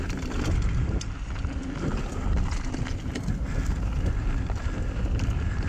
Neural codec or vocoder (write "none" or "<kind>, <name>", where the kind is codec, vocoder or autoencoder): none